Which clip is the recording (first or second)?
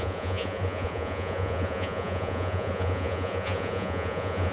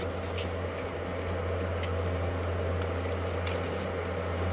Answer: second